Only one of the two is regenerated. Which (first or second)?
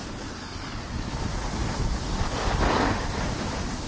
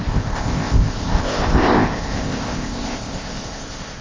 second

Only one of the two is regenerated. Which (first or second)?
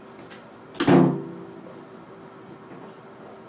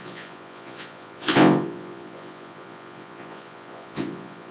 second